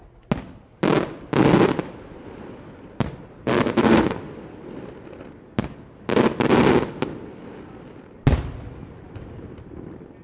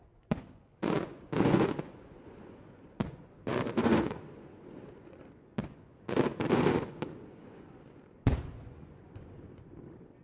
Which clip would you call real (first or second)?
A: first